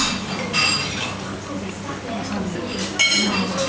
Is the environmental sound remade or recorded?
recorded